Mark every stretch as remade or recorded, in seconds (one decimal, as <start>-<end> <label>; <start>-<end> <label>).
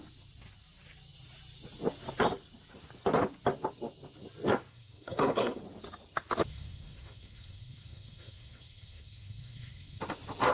0.0-4.7 recorded; 4.7-5.6 remade; 5.6-6.5 recorded; 6.5-10.0 remade; 10.0-10.5 recorded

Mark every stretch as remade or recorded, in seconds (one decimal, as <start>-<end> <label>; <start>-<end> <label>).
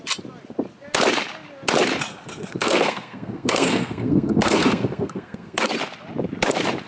0.0-2.1 recorded; 2.1-5.7 remade; 5.7-6.9 recorded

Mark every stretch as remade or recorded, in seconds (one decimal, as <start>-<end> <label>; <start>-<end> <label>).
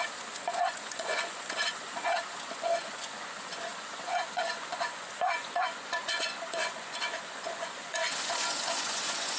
0.0-9.4 remade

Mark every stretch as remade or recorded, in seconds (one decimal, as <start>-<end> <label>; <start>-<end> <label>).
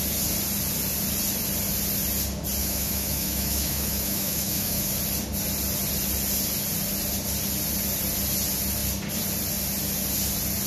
0.0-2.6 recorded; 2.6-4.9 remade; 4.9-10.7 recorded